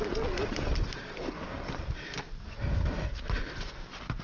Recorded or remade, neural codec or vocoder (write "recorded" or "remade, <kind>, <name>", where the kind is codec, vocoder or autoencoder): recorded